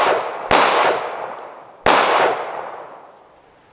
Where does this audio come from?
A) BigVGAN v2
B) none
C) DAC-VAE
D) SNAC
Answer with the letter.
B